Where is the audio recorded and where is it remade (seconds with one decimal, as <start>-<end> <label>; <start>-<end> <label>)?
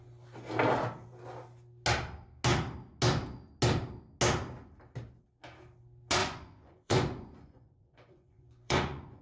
0.0-6.2 recorded; 6.2-9.2 remade